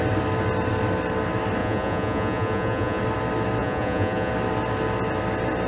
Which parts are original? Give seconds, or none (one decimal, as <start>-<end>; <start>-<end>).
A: 0.0-1.6; 3.0-3.6; 4.3-5.7